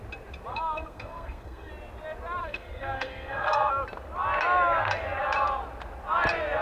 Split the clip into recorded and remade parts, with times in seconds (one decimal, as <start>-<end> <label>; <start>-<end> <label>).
0.0-0.5 recorded; 0.5-1.7 remade; 1.7-2.4 recorded; 2.4-3.7 remade; 3.7-6.6 recorded

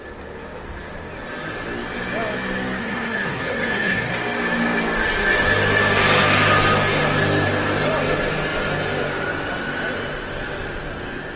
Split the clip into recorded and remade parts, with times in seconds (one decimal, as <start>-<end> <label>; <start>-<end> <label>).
0.0-2.8 recorded; 2.8-4.1 remade; 4.1-11.4 recorded

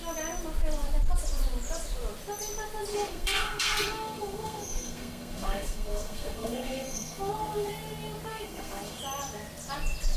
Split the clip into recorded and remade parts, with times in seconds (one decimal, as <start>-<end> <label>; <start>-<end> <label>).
0.0-2.9 recorded; 2.9-7.7 remade; 7.7-8.3 recorded; 8.3-9.0 remade; 9.0-10.2 recorded

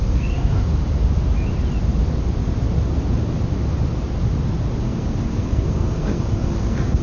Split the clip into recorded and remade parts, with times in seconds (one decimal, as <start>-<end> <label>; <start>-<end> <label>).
0.0-0.7 remade; 0.7-4.8 recorded; 4.8-7.0 remade

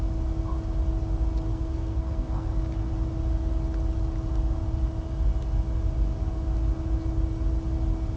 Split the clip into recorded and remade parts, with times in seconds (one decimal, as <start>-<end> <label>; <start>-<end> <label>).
0.0-1.5 recorded; 1.5-2.6 remade; 2.6-8.2 recorded

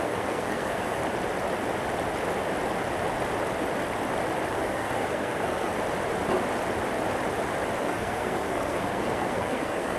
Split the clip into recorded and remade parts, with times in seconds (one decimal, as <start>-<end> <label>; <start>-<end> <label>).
0.0-1.0 remade; 1.0-4.5 recorded; 4.5-5.7 remade; 5.7-7.8 recorded; 7.8-10.0 remade

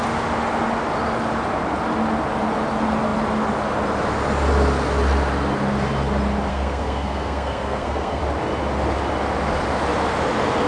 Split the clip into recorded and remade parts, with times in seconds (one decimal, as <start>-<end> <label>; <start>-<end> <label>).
0.0-6.5 recorded; 6.5-8.2 remade; 8.2-10.7 recorded

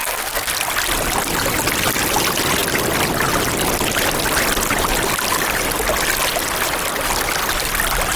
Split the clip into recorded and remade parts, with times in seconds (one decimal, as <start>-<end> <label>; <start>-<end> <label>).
0.0-0.5 remade; 0.5-8.2 recorded